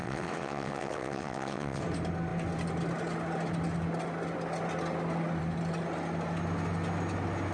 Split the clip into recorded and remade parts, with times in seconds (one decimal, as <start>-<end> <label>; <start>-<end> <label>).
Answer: 0.0-1.8 remade; 1.8-7.5 recorded